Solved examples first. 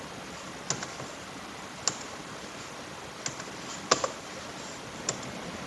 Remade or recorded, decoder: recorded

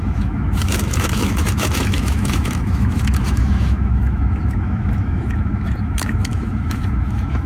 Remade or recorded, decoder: remade, autoencoder, DAC-VAE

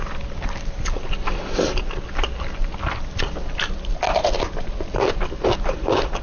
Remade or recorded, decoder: recorded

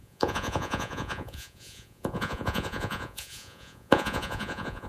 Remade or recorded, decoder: remade, vocoder, Vocos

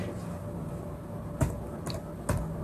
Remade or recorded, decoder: recorded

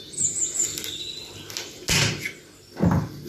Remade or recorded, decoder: recorded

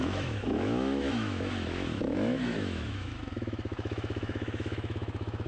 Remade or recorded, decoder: remade, autoencoder, DAC-VAE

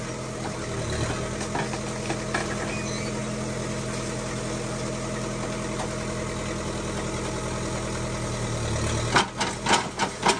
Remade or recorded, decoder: recorded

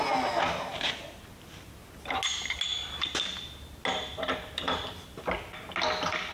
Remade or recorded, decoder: recorded